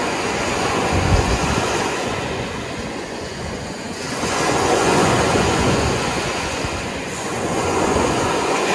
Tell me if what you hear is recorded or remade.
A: remade